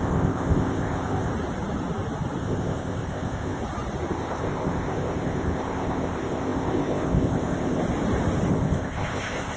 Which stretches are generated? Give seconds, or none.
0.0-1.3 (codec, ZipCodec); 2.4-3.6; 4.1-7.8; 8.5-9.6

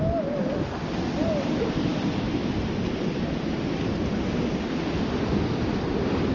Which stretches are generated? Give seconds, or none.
none

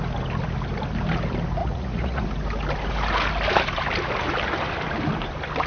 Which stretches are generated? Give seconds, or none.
1.6-2.2 (vocoder, Vocos)

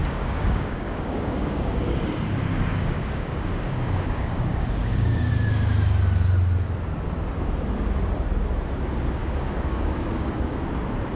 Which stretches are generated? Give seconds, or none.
0.0-2.0 (codec, DAC); 2.7-5.3; 9.2-10.6